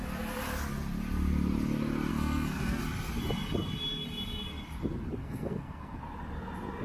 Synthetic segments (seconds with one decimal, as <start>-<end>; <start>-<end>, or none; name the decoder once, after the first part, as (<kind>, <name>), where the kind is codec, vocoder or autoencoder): 2.1-2.8 (codec, SNAC); 5.2-6.0